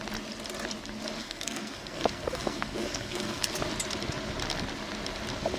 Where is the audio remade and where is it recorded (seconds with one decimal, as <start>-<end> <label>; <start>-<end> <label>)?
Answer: 0.0-1.2 recorded; 1.2-3.5 remade; 3.5-5.6 recorded